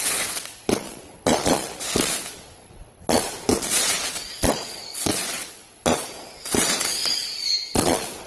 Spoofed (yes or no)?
yes